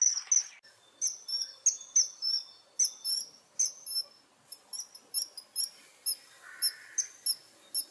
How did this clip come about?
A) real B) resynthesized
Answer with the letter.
A